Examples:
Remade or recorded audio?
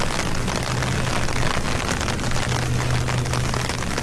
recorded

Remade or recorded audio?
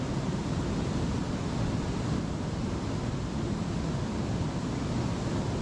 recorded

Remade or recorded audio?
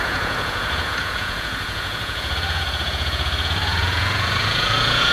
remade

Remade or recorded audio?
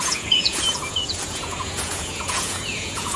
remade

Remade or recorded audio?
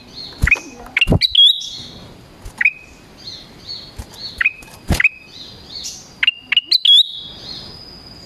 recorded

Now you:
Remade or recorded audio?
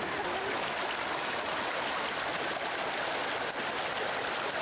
recorded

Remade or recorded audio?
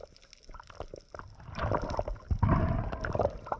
recorded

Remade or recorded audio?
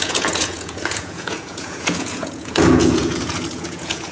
remade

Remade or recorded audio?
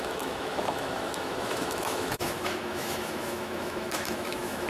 remade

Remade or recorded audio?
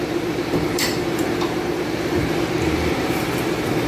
remade